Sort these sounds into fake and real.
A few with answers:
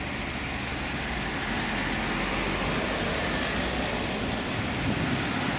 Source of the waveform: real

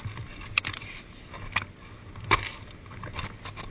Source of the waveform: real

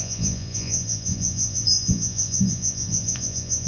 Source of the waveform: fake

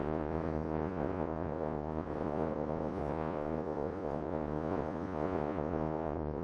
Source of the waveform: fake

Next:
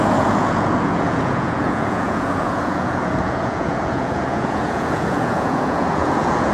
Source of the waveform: fake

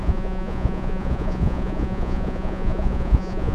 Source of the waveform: fake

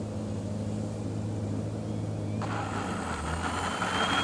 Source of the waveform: real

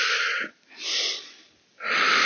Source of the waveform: real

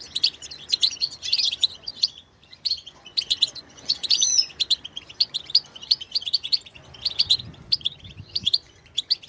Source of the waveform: fake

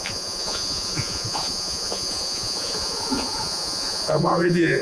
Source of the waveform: fake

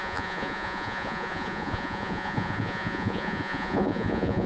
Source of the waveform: fake